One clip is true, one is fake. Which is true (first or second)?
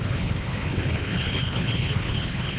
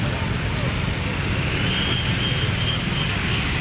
second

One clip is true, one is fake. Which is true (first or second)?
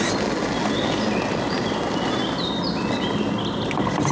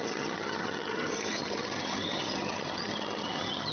first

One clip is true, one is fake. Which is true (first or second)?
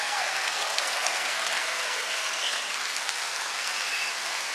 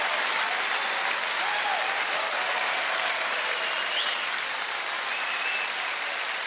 second